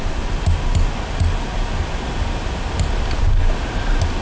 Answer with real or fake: real